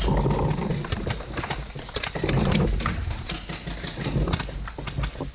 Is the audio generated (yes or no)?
no